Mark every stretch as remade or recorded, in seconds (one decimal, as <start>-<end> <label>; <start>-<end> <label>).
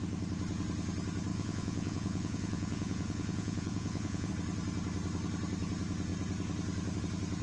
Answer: 0.0-1.3 recorded; 1.3-4.3 remade; 4.3-7.4 recorded